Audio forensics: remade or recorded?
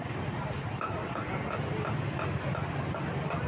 recorded